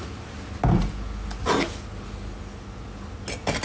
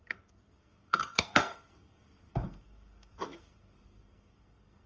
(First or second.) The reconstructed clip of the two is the second